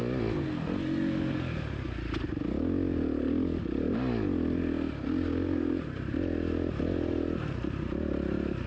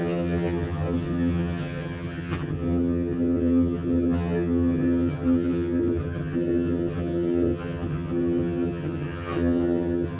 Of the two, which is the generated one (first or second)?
second